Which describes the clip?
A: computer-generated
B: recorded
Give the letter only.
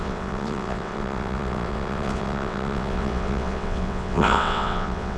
A